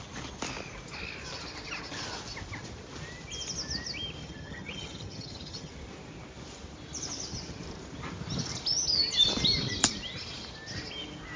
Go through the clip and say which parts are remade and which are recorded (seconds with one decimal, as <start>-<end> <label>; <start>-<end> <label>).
0.0-4.2 recorded; 4.2-5.7 remade; 5.7-11.4 recorded